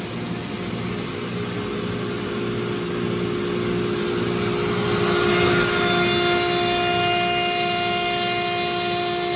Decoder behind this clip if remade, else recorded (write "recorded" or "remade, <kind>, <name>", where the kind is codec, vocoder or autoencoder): recorded